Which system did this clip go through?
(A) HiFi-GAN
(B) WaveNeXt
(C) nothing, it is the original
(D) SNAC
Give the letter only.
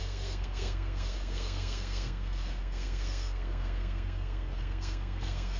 D